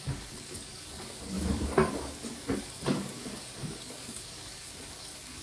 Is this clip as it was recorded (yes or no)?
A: no